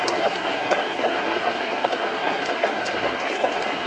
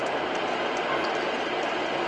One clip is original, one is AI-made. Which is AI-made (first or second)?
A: first